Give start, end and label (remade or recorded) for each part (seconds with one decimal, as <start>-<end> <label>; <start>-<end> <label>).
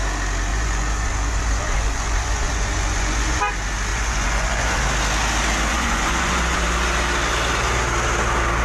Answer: 0.0-0.5 recorded; 0.5-3.4 remade; 3.4-3.9 recorded; 3.9-4.8 remade; 4.8-5.7 recorded; 5.7-6.6 remade; 6.6-8.6 recorded